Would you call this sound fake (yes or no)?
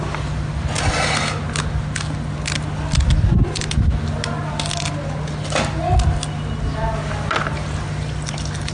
no